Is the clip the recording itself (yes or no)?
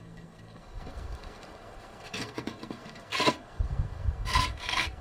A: no